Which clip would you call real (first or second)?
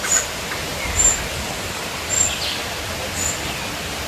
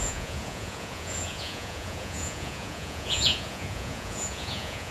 first